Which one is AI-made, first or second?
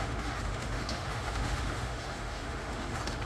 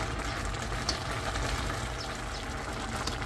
first